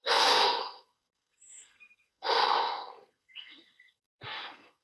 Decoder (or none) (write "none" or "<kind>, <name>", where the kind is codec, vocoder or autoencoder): codec, SNAC